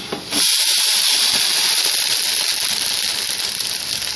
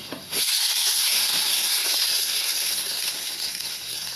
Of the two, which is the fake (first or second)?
second